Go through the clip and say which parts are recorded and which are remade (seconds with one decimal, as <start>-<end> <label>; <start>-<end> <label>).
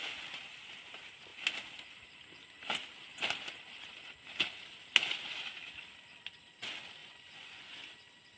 0.0-7.0 recorded; 7.0-7.7 remade; 7.7-8.4 recorded